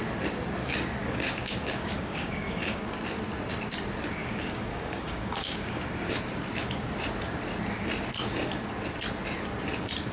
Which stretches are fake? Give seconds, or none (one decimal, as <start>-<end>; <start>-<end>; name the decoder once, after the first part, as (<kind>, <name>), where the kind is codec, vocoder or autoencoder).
1.0-3.0 (codec, DAC); 4.2-6.2